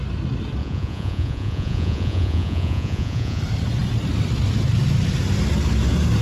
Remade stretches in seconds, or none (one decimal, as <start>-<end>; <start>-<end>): 0.6-3.4